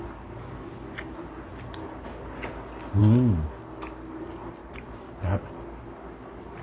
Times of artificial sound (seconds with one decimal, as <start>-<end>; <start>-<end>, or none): 4.6-5.5